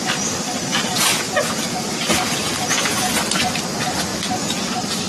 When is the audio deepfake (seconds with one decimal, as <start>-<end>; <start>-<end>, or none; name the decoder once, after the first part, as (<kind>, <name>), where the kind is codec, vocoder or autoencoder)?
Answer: none